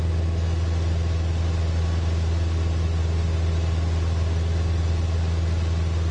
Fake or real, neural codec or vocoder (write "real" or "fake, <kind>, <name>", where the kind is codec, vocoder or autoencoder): real